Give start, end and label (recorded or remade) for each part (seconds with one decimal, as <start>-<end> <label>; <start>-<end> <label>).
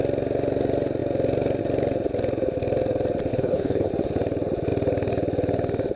0.0-3.3 recorded; 3.3-3.9 remade; 3.9-6.0 recorded